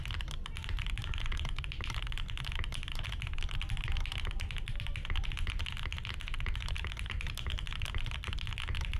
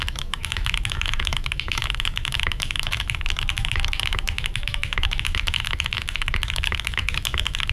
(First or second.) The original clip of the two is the first